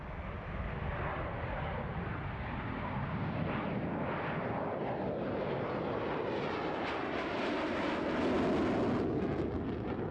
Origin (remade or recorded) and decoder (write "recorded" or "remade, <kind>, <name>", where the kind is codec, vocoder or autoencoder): recorded